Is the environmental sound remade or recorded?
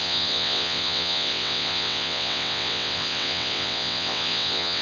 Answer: remade